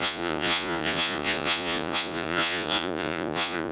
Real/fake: fake